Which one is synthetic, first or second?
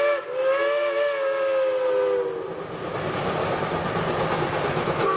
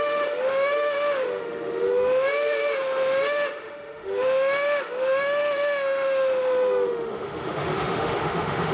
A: second